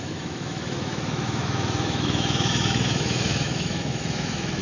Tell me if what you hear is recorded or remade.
remade